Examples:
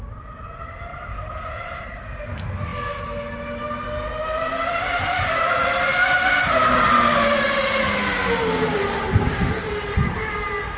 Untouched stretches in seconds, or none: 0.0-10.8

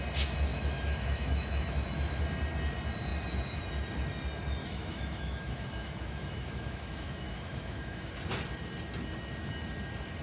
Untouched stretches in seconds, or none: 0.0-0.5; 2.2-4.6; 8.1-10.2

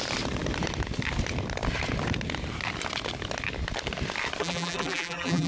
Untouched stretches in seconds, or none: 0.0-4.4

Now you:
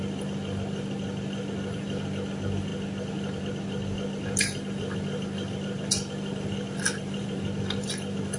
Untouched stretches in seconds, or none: 0.0-8.4

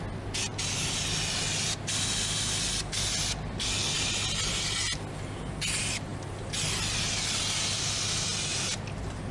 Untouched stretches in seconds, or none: 0.0-9.3